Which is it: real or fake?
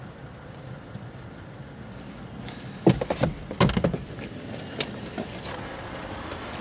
real